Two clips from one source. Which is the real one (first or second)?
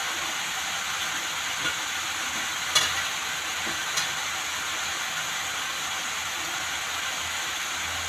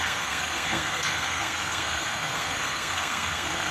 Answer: first